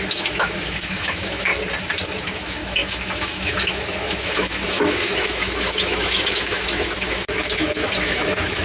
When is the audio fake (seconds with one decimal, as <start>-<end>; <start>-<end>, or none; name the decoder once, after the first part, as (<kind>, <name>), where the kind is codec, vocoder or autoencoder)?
0.0-1.5 (autoencoder, DAC-VAE); 2.2-8.6